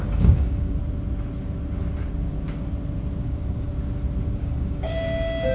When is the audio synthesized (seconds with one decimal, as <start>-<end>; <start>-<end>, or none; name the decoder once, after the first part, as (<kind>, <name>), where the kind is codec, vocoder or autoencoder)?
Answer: 0.0-0.8 (codec, DAC); 3.2-3.7; 4.4-5.5